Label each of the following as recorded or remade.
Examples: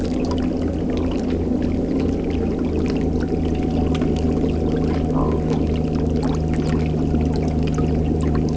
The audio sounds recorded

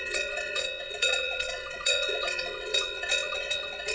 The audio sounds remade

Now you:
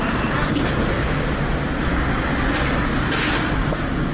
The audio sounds recorded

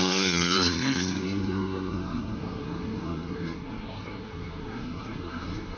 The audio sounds remade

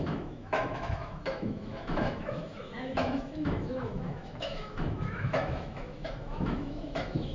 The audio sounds remade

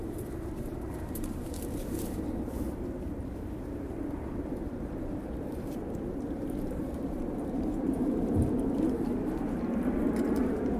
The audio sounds remade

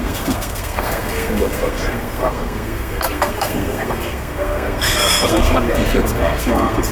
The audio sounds remade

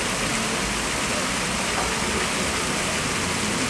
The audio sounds recorded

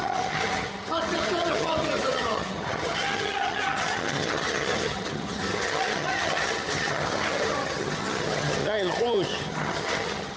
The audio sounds remade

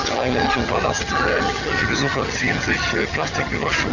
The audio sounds remade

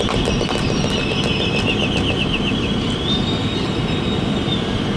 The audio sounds recorded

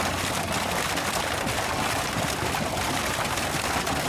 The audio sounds recorded